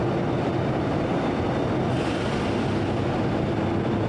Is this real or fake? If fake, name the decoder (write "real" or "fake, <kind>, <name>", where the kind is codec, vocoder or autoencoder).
real